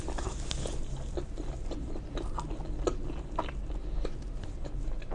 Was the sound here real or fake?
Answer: real